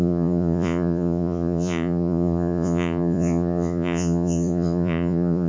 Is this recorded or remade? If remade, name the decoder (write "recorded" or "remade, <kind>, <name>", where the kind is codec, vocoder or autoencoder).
remade, vocoder, Vocos